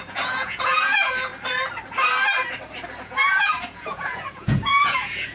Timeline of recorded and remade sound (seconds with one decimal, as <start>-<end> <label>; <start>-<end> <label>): 0.0-1.3 remade; 1.3-3.0 recorded; 3.0-5.3 remade